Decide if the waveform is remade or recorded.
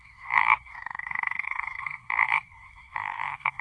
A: remade